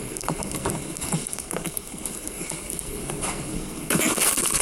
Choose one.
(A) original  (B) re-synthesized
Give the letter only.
B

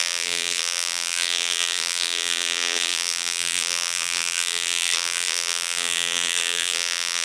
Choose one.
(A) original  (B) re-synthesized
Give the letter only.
B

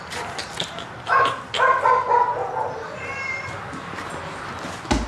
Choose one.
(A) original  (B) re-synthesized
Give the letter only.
A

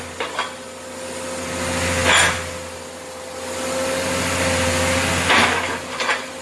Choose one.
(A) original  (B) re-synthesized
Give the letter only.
A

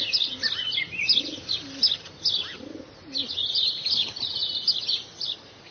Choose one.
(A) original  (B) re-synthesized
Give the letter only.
A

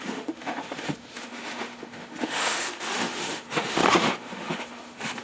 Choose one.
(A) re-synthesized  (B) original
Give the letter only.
A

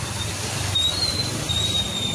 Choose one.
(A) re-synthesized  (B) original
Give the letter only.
B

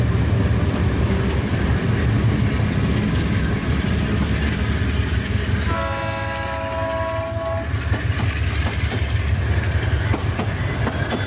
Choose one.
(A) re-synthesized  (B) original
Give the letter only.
B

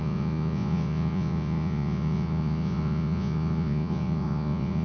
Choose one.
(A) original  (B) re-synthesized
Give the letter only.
B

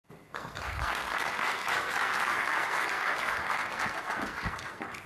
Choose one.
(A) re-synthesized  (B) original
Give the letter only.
A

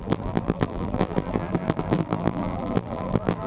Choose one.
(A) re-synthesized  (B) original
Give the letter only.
A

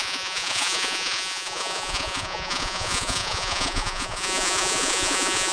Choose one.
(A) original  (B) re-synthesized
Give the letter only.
B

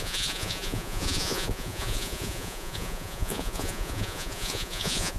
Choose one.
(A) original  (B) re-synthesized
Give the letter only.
B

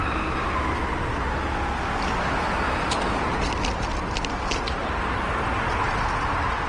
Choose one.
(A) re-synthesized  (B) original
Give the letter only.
B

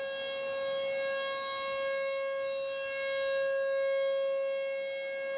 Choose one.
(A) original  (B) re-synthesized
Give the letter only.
A